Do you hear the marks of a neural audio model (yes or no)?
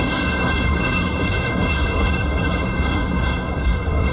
yes